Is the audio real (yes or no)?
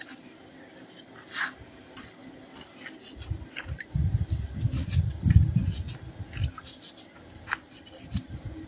yes